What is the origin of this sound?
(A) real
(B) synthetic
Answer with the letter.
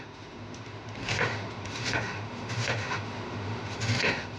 B